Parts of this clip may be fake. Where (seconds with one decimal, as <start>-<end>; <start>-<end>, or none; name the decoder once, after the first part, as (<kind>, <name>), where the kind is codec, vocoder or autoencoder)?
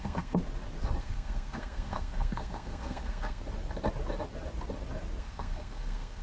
0.0-0.4 (codec, SNAC); 1.0-3.4; 5.2-6.2